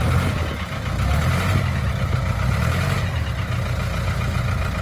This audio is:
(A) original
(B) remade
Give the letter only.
A